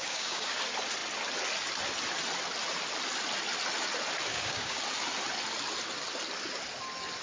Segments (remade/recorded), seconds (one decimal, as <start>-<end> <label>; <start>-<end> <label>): 0.0-0.6 remade; 0.6-4.3 recorded; 4.3-4.8 remade; 4.8-7.2 recorded